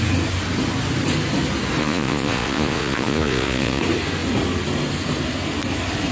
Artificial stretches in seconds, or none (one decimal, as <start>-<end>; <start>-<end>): 1.8-3.8